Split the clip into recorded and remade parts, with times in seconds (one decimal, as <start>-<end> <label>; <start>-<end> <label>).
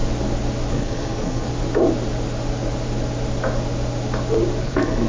0.0-0.7 recorded; 0.7-1.5 remade; 1.5-4.6 recorded; 4.6-5.1 remade